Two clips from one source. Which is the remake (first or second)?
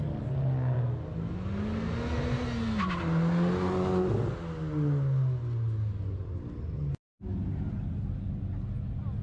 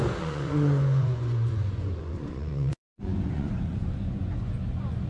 second